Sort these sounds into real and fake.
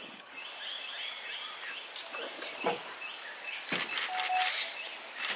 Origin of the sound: real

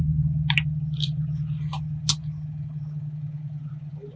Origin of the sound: real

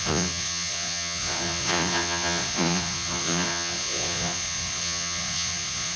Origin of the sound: fake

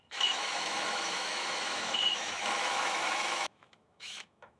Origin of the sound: fake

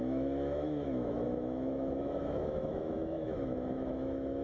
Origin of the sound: fake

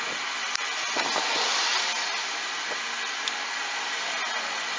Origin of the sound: real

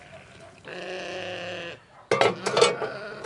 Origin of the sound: real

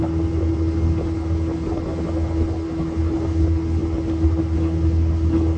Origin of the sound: real